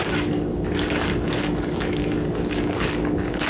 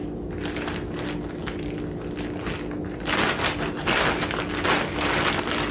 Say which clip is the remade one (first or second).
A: first